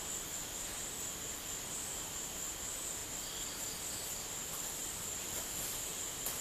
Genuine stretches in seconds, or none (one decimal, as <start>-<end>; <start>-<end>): 0.0-6.4